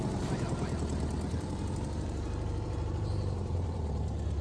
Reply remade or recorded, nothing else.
remade